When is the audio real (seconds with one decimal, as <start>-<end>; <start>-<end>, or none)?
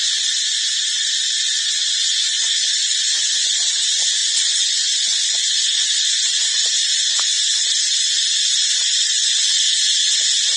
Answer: 0.0-2.1; 3.3-4.2; 6.1-9.0; 9.6-10.6